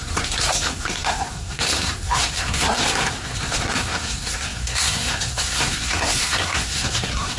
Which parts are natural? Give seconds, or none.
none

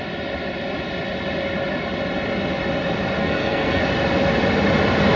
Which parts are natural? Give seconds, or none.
0.0-3.2; 3.8-5.2

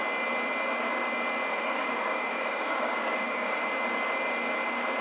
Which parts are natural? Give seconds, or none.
0.0-1.5; 3.6-5.0

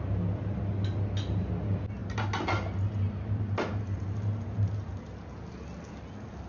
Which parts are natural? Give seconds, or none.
0.0-6.5